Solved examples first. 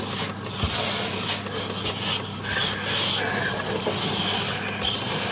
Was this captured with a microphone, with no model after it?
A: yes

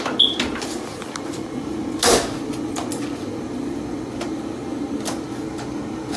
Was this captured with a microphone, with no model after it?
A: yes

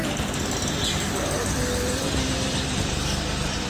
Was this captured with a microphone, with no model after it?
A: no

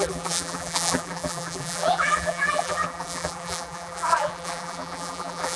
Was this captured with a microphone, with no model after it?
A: no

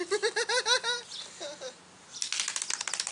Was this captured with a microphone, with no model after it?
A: yes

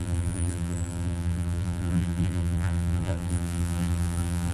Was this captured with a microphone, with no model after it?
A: no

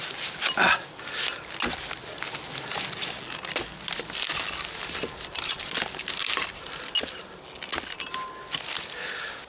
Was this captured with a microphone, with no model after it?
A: yes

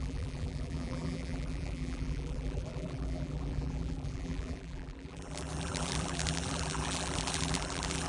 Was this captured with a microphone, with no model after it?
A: no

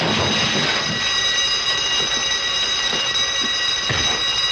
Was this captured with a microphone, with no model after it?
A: yes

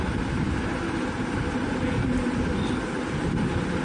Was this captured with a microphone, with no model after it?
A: yes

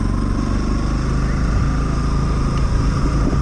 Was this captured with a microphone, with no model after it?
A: yes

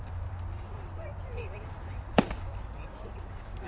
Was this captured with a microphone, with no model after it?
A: no